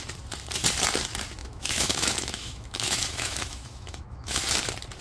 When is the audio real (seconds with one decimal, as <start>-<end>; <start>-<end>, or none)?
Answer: 0.0-1.4; 4.4-5.0

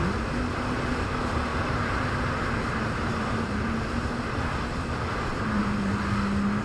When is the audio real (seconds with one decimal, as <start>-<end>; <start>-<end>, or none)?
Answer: 0.0-1.5; 4.5-5.3; 5.9-6.6

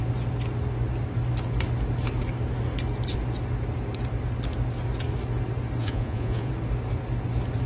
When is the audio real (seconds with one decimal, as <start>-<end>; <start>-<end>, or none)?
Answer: 0.0-5.8; 6.5-7.7

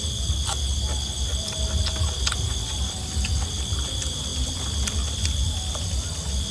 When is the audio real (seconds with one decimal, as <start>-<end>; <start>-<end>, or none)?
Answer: 0.0-6.5

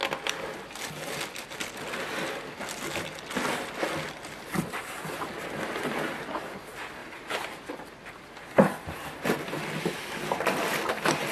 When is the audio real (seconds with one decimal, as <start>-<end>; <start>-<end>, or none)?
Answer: 0.0-11.3

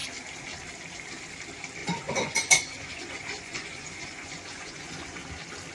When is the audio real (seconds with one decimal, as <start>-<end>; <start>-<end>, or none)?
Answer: 0.0-1.8; 5.2-5.7

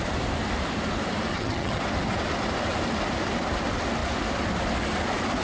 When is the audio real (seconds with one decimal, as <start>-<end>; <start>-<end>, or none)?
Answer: 0.0-1.3; 1.8-5.4